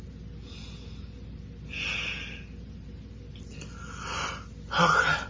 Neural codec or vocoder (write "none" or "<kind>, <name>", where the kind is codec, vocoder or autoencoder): none